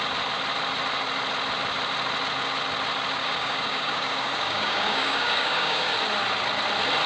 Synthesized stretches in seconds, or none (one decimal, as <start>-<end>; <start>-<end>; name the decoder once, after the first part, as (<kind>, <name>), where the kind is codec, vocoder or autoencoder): 3.2-5.9 (codec, DAC)